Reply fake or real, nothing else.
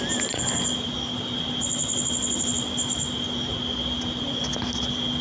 real